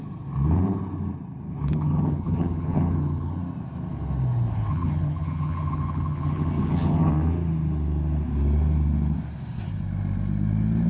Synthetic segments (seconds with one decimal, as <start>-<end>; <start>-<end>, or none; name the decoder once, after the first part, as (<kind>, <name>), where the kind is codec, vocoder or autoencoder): 1.7-3.3 (vocoder, HiFi-GAN); 4.7-7.1